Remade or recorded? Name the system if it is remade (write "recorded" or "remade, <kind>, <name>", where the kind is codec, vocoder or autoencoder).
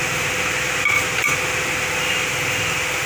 recorded